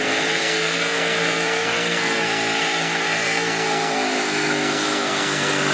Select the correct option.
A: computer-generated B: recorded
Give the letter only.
A